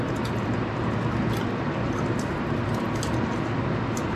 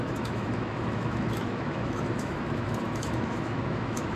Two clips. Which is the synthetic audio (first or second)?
second